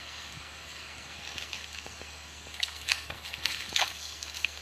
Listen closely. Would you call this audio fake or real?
fake